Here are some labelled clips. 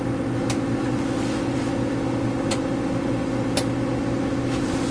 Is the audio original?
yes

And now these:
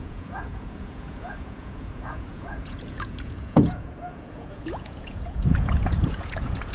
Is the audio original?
no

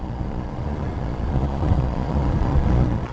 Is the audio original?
no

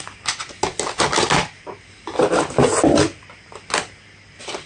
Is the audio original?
yes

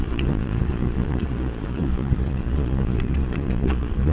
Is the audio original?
no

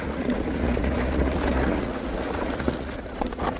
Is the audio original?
no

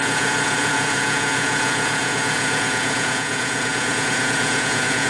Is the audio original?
no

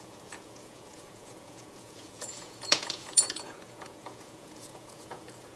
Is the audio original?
no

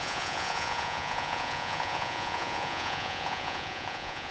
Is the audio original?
no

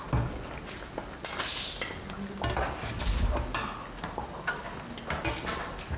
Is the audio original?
yes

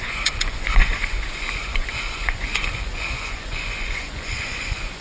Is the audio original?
no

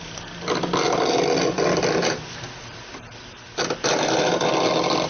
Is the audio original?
yes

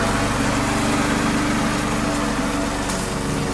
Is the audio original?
yes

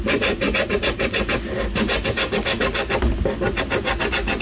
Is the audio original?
yes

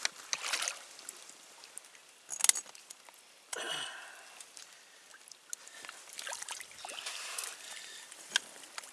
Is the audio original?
yes